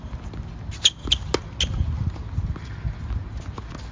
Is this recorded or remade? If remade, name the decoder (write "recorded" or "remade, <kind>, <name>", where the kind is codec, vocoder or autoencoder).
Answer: recorded